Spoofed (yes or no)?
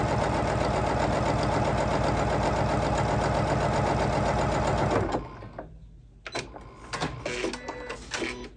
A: no